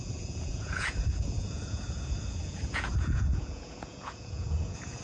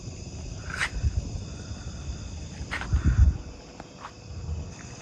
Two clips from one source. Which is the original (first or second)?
second